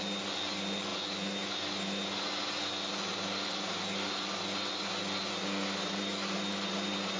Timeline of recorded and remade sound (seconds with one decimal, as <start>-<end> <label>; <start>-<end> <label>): 0.0-7.2 recorded